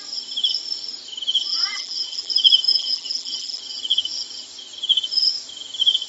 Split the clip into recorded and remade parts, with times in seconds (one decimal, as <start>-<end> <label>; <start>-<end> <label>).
0.0-1.5 recorded; 1.5-2.3 remade; 2.3-2.7 recorded; 2.7-3.6 remade; 3.6-6.1 recorded